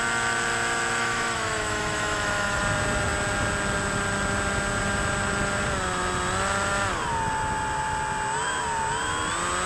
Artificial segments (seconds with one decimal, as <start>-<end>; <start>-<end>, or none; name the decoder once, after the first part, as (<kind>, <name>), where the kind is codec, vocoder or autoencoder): 1.0-2.6 (autoencoder, DAC-VAE)